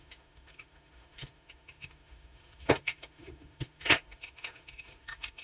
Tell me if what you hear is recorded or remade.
remade